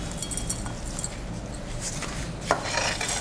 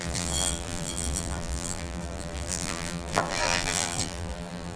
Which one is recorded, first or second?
first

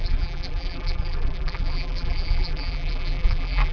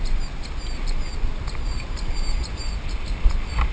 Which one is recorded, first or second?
second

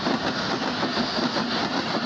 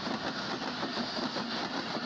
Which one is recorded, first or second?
first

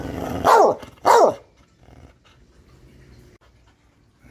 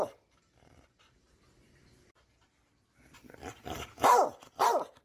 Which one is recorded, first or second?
first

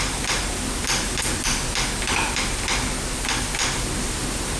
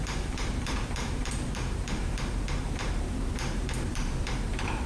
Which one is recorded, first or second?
first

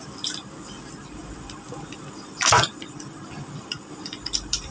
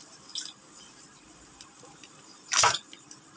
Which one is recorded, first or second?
first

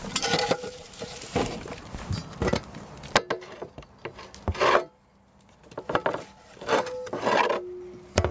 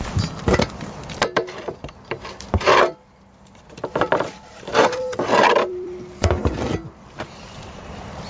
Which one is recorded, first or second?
first